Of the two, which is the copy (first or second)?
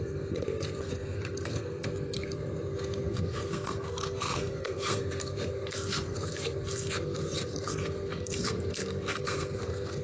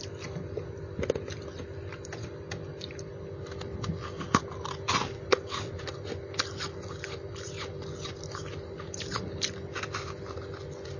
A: first